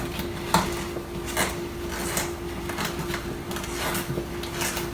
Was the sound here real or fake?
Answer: real